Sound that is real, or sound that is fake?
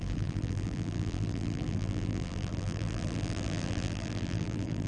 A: fake